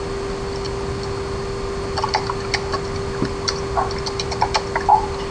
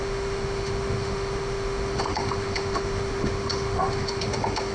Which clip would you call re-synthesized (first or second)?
second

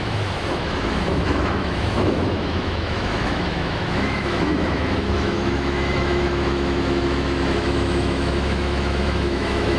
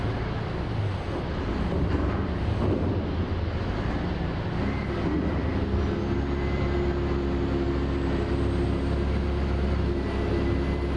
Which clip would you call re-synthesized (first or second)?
first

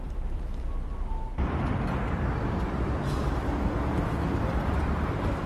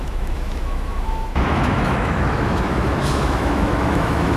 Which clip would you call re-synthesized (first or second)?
second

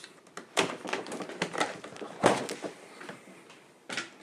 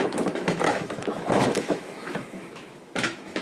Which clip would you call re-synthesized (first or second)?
second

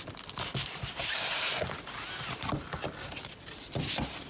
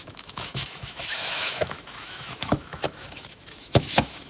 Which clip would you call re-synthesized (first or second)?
second